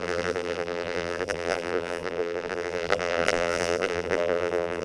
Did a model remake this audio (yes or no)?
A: yes